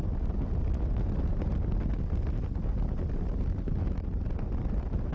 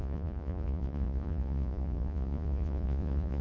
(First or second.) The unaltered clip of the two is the first